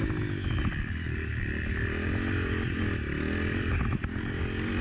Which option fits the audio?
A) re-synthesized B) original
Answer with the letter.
B